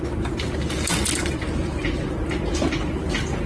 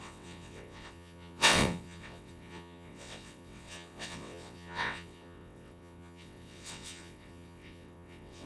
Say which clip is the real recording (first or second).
first